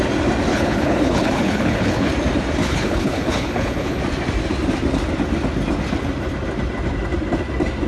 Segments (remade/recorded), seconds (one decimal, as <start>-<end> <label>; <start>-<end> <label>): 0.0-0.5 recorded; 0.5-2.1 remade; 2.1-2.6 recorded; 2.6-4.0 remade; 4.0-7.9 recorded